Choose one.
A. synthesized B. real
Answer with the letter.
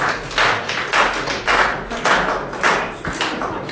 B